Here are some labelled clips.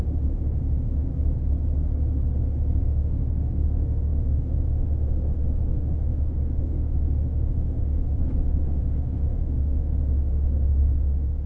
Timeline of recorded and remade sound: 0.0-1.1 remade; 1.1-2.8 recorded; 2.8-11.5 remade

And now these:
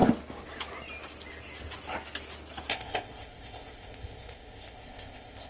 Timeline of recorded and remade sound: 0.0-2.7 recorded; 2.7-5.5 remade

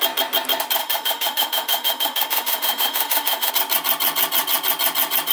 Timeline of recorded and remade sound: 0.0-0.8 recorded; 0.8-3.5 remade; 3.5-5.3 recorded